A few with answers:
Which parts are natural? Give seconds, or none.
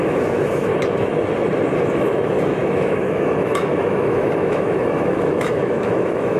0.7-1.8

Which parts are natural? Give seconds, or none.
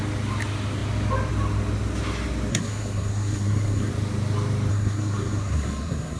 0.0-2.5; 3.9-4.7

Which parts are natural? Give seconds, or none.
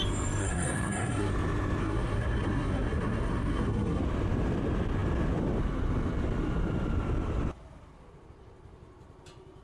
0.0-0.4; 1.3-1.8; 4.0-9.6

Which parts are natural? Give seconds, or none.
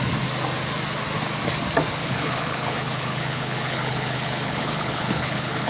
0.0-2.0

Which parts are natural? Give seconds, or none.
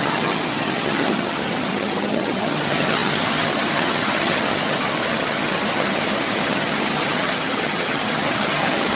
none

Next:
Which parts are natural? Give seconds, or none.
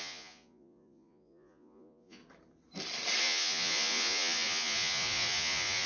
2.2-3.2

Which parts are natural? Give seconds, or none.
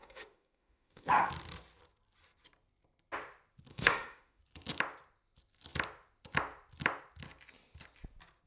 1.3-3.7; 4.4-8.5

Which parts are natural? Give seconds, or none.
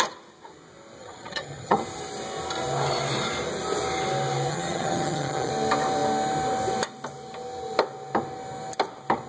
0.0-1.0; 1.8-4.5; 5.5-9.3